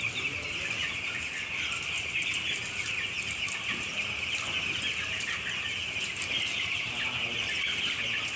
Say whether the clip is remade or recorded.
recorded